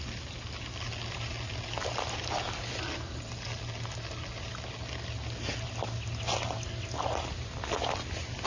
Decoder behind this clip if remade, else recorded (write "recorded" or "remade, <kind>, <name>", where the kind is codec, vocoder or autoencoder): recorded